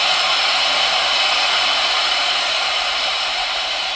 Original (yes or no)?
no